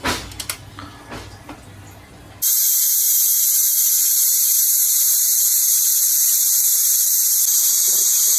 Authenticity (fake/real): real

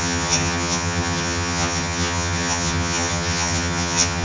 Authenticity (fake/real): fake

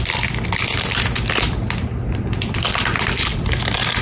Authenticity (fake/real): real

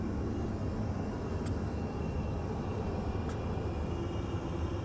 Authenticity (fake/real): real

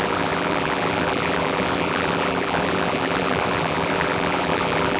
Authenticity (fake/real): fake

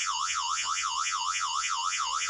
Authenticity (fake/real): fake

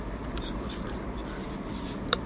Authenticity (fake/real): fake